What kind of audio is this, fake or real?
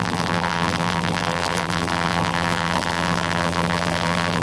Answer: fake